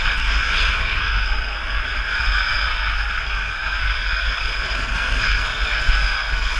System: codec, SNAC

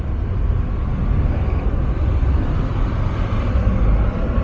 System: none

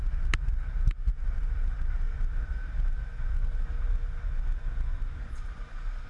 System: none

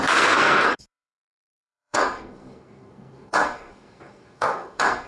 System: codec, SNAC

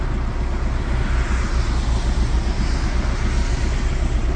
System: none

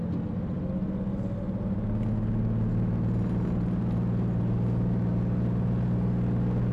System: none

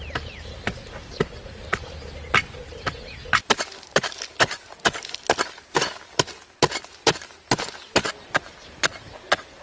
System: none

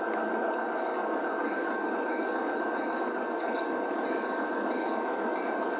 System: codec, DAC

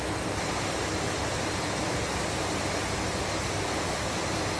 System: none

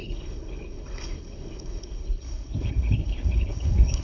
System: codec, HILCodec